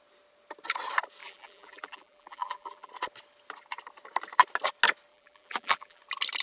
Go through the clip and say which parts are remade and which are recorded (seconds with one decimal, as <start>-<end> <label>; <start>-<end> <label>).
0.0-1.2 recorded; 1.2-2.9 remade; 2.9-5.1 recorded; 5.1-6.0 remade; 6.0-6.4 recorded